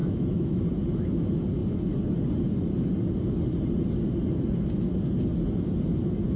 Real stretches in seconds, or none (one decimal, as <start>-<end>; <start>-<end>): 0.6-6.4